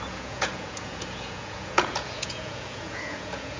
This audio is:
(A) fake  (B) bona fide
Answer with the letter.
A